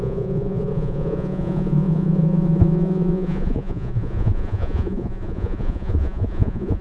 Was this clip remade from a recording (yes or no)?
yes